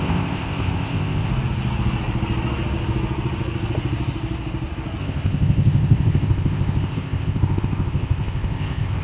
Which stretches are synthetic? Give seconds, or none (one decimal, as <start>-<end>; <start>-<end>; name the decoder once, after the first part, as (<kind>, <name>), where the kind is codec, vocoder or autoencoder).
0.0-1.3 (codec, ZipCodec); 5.0-9.0